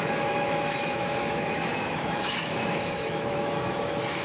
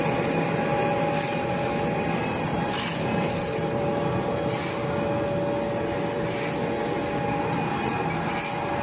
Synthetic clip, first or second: first